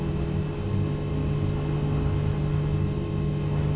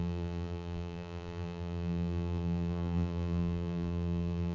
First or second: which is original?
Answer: first